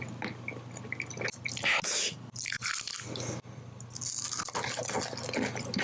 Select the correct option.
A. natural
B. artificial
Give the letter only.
A